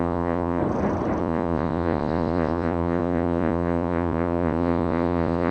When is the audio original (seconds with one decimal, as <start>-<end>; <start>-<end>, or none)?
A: 0.6-1.2